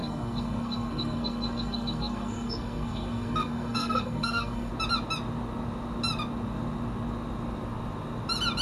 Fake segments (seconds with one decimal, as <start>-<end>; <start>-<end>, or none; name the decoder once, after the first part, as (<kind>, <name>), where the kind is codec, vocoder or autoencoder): 0.0-4.7 (codec, SNAC)